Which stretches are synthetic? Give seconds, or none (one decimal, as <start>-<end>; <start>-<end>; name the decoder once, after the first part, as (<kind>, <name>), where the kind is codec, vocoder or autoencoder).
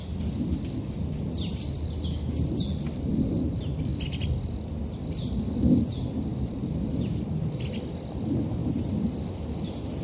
6.3-10.0 (vocoder, BigVGAN v2)